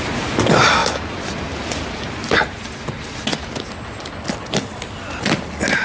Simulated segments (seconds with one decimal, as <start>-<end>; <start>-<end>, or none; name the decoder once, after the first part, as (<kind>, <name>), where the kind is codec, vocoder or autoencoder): none